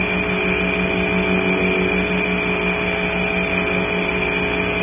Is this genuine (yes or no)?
yes